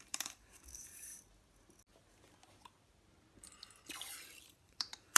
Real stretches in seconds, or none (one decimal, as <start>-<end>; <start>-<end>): 1.1-4.2

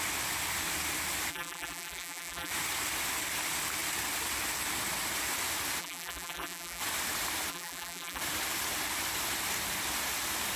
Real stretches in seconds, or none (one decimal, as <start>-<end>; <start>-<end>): 0.0-1.3; 2.5-5.8; 6.8-7.5; 8.2-10.6

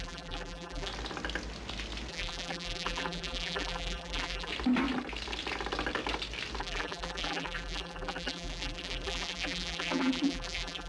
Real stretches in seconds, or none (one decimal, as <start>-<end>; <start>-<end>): 0.9-2.1; 4.5-6.6

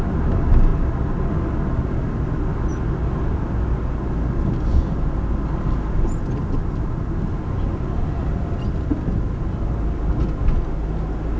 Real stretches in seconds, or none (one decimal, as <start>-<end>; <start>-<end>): 0.0-0.7; 1.3-8.2; 9.1-11.4

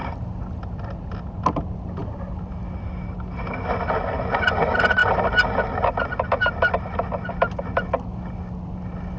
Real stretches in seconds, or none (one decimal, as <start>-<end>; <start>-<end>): 0.0-9.2

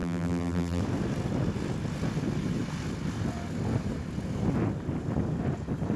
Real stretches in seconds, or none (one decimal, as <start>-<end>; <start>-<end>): 0.8-6.0

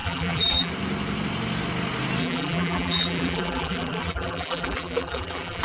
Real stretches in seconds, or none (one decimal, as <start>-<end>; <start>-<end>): 0.7-2.2